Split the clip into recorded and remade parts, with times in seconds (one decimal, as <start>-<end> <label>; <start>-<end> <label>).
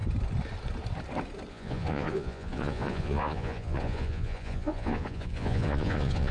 0.0-1.5 recorded; 1.5-6.3 remade